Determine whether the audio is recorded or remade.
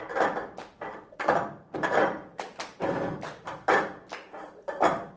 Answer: recorded